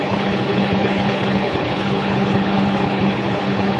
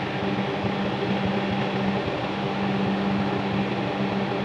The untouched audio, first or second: second